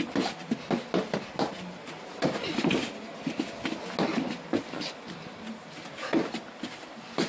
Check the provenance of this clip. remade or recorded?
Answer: recorded